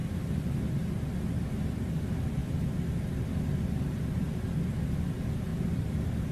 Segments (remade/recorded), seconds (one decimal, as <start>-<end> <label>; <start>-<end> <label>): 0.0-0.9 remade; 0.9-5.5 recorded; 5.5-6.3 remade